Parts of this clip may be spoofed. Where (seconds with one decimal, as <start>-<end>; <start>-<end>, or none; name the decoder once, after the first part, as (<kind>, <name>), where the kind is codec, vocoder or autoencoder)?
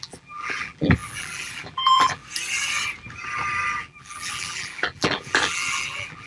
0.0-2.2 (vocoder, BigVGAN v2); 3.8-6.3